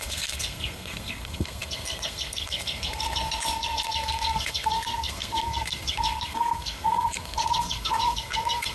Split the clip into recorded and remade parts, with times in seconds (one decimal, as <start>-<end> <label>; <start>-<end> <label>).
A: 0.0-8.7 remade